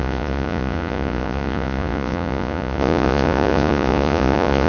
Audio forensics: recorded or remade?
remade